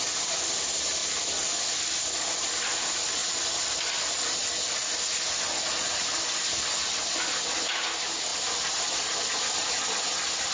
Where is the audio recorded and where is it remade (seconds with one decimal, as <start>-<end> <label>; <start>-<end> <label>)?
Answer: 0.0-1.0 recorded; 1.0-2.5 remade; 2.5-10.5 recorded